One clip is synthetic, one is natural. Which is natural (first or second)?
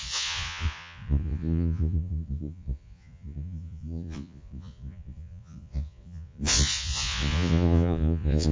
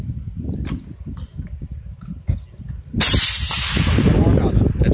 second